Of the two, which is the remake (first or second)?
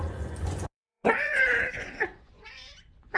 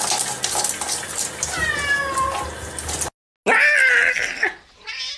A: first